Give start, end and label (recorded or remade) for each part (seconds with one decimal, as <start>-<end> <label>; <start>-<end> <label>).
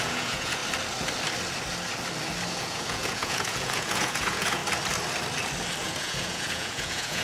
0.0-0.6 remade; 0.6-2.6 recorded; 2.6-4.6 remade; 4.6-5.8 recorded; 5.8-7.2 remade